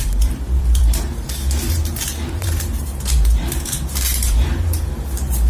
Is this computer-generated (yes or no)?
yes